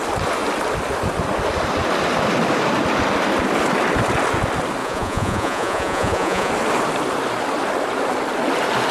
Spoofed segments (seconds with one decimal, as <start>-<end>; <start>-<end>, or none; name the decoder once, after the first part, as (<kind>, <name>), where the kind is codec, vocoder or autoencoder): 4.8-6.5 (vocoder, Vocos)